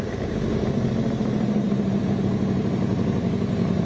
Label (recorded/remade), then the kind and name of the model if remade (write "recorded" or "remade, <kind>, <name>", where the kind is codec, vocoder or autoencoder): remade, vocoder, BigVGAN v2